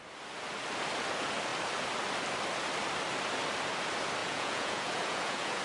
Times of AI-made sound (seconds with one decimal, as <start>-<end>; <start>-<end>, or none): 4.2-5.6